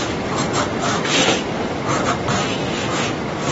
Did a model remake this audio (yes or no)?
no